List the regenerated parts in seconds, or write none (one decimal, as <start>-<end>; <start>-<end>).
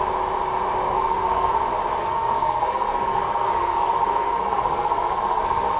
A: 0.8-1.5; 2.0-5.8